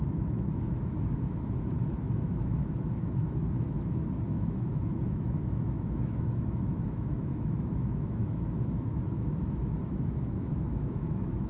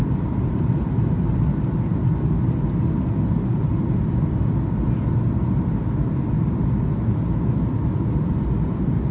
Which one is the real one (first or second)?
second